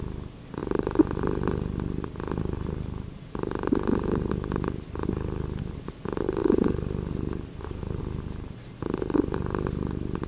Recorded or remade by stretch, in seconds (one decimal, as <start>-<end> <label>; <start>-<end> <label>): 0.0-10.3 recorded